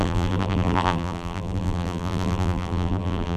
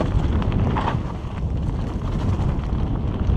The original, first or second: second